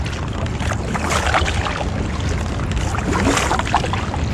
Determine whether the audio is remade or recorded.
recorded